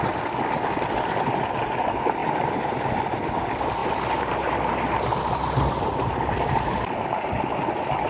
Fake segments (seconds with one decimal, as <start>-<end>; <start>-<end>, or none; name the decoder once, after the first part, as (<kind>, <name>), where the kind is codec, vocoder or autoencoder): 2.2-3.0 (vocoder, BigVGAN v2); 3.8-6.1